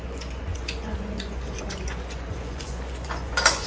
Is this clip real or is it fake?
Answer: fake